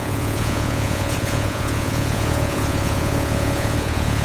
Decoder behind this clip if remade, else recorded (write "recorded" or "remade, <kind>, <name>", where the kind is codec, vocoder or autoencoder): remade, vocoder, Vocos